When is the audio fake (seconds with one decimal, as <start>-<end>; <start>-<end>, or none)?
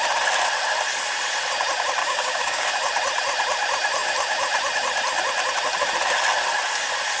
2.0-2.7